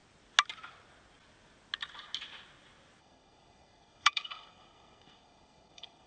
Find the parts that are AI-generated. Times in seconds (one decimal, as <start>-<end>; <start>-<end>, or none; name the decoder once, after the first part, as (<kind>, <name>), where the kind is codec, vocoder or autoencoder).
3.0-6.1 (codec, SNAC)